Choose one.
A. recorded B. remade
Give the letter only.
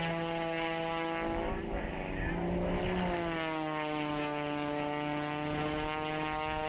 A